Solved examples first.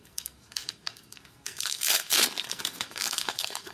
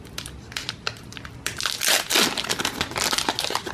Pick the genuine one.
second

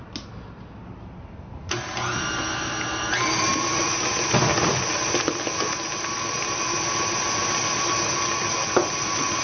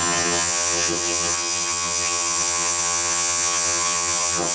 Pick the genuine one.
first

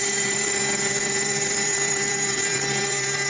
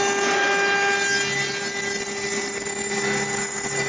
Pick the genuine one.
second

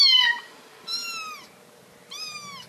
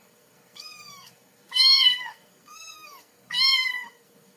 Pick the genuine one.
first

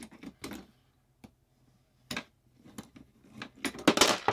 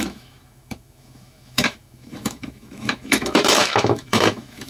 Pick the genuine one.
first